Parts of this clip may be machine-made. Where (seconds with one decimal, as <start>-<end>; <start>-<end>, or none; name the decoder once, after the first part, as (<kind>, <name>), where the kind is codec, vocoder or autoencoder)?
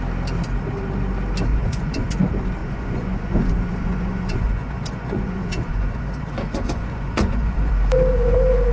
1.5-2.2 (vocoder, Vocos); 2.6-7.7